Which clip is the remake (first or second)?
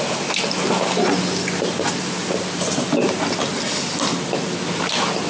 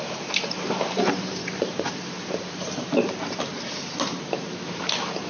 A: second